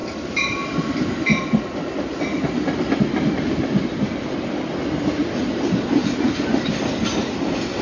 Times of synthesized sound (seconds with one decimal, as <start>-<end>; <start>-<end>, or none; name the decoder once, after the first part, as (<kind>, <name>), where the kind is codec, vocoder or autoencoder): none